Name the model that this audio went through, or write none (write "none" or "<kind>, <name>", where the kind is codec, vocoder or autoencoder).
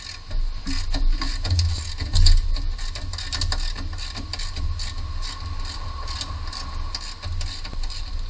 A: none